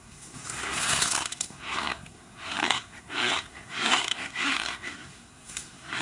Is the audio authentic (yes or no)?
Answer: no